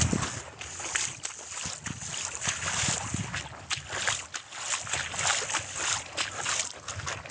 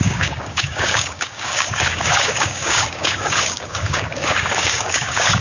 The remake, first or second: second